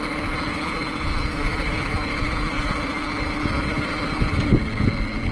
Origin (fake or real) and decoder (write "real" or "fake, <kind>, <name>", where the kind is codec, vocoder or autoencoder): real